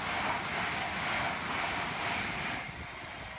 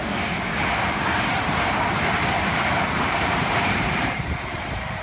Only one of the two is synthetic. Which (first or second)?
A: second